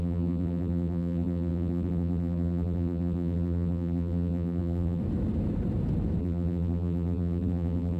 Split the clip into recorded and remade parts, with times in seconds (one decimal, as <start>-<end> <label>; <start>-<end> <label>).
0.0-5.0 remade; 5.0-6.2 recorded; 6.2-8.0 remade